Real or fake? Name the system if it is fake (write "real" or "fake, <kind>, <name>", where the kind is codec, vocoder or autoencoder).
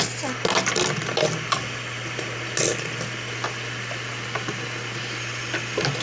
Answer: real